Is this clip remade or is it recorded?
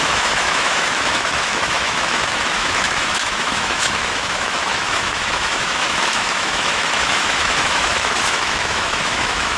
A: remade